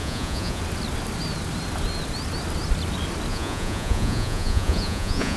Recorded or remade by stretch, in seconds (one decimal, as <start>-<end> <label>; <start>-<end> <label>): 0.0-0.6 remade; 0.6-3.3 recorded; 3.3-5.4 remade